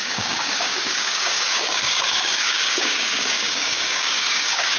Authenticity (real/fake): fake